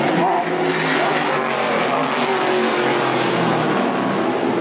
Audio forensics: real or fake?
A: real